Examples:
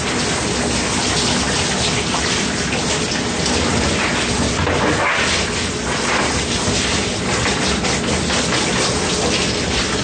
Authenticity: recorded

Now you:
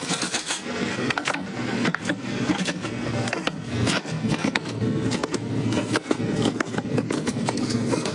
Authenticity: remade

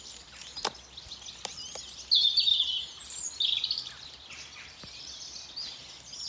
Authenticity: recorded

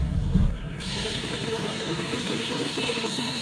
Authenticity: remade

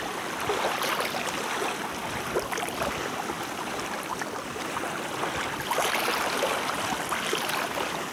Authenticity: recorded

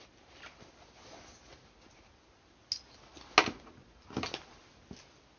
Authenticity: recorded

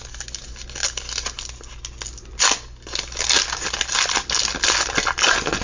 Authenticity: recorded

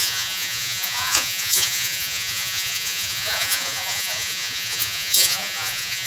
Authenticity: remade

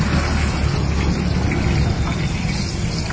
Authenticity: recorded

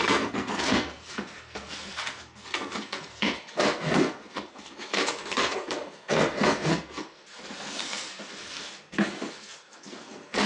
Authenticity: remade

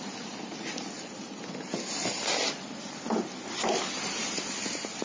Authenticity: recorded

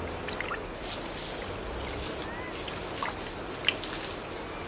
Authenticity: recorded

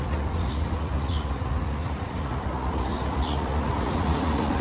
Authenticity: remade